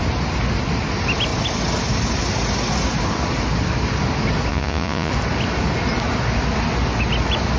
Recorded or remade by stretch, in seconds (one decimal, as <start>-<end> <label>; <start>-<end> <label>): 0.0-4.5 recorded; 4.5-5.1 remade; 5.1-7.6 recorded